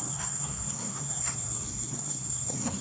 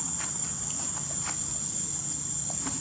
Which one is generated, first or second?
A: first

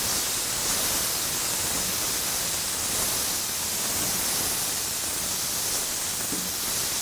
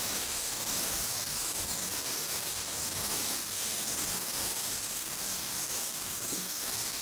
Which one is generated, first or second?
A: second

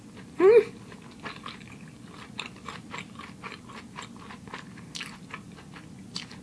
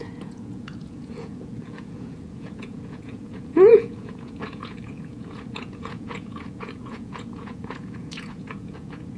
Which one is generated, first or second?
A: second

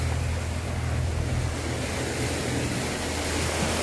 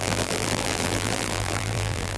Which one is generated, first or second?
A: second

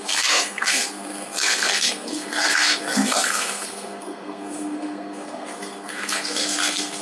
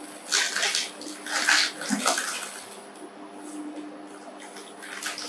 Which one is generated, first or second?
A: first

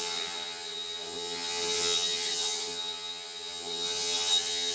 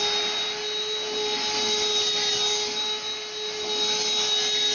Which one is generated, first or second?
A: first